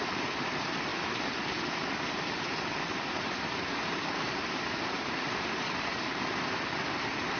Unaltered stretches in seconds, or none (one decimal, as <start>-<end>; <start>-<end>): 0.9-2.0; 5.9-6.7